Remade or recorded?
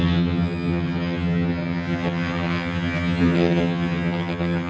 remade